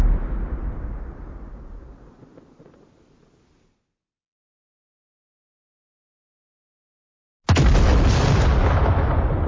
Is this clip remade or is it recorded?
recorded